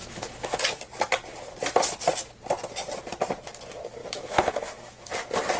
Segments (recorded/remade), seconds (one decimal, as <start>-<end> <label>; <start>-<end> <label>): 0.0-0.6 remade; 0.6-4.0 recorded; 4.0-5.1 remade; 5.1-5.6 recorded